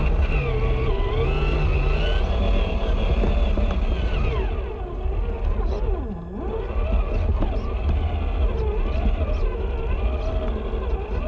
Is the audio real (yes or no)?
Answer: yes